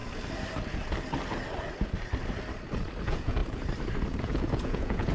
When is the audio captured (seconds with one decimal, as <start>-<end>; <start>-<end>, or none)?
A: 0.0-3.0; 3.4-4.2